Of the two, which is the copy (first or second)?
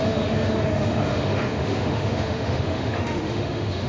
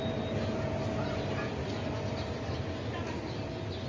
first